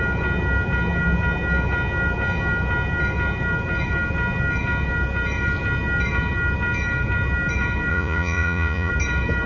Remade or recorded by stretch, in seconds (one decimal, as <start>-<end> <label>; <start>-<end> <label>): 0.0-7.9 recorded; 7.9-8.9 remade; 8.9-9.5 recorded

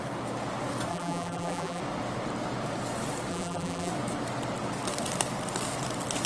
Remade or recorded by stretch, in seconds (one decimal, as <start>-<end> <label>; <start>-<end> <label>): 0.0-0.9 recorded; 0.9-1.8 remade; 1.8-3.3 recorded; 3.3-3.9 remade; 3.9-6.3 recorded

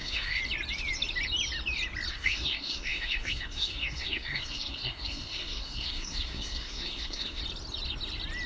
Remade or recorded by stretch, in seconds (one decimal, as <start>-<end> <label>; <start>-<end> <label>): 0.0-0.4 remade; 0.4-2.1 recorded; 2.1-7.4 remade; 7.4-8.5 recorded

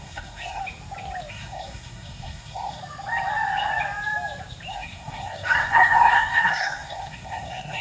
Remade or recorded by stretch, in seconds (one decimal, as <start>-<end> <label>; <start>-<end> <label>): 0.0-0.6 remade; 0.6-1.3 recorded; 1.3-2.8 remade; 2.8-4.7 recorded; 4.7-7.8 remade